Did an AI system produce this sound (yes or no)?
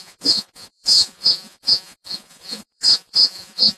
yes